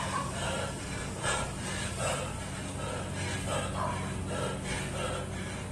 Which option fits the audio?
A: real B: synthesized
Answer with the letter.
A